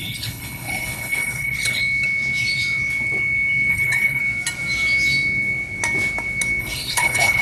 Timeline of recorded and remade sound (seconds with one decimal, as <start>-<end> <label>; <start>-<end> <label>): 0.0-1.8 remade; 1.8-3.7 recorded; 3.7-4.2 remade; 4.2-6.6 recorded; 6.6-7.4 remade